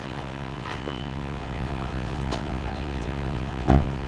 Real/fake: fake